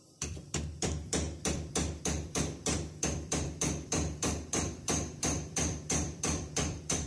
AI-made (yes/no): yes